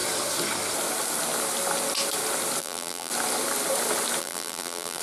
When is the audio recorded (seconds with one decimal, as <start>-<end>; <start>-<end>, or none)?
0.0-2.6; 3.1-4.2